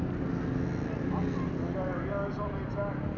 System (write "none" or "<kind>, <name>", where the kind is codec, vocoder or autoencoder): none